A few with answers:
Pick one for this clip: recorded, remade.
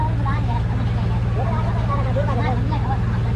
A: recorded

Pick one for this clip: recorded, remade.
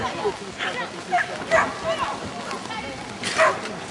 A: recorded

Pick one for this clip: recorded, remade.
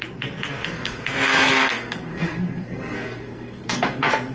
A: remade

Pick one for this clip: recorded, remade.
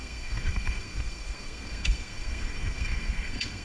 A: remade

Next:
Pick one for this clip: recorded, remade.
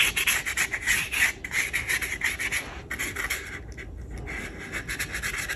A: recorded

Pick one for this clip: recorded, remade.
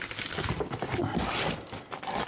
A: recorded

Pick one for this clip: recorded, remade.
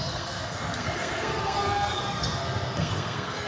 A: remade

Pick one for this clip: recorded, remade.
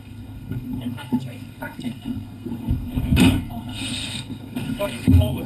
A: remade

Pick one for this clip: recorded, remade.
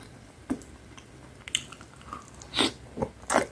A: recorded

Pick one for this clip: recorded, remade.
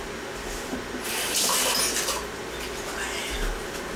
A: recorded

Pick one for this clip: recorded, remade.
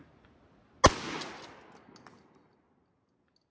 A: recorded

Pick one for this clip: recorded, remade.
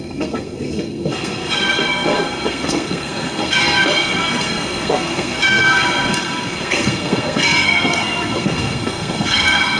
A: remade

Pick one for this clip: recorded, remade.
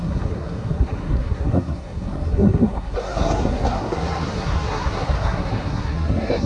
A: remade